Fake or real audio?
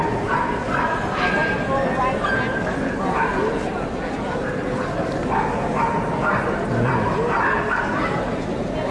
real